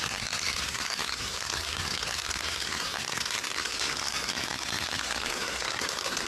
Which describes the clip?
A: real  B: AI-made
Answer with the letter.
B